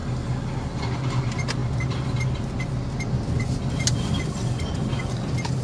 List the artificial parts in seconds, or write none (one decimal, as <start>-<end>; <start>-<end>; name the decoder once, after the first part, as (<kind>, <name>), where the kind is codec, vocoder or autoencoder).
none